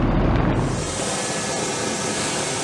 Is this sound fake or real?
real